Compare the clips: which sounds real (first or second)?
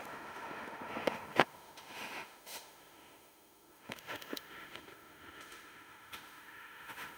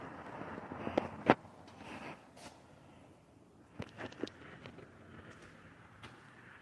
second